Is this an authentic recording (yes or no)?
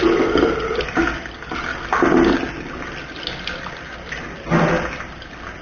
yes